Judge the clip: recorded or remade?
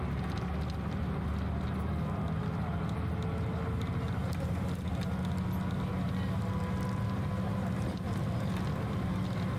recorded